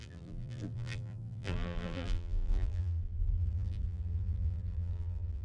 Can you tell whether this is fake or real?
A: fake